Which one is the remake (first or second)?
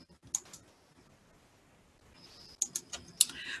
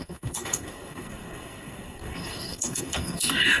second